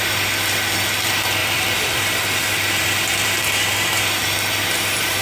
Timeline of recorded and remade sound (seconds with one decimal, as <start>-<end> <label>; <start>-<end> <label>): 0.0-1.4 recorded; 1.4-3.4 remade; 3.4-5.2 recorded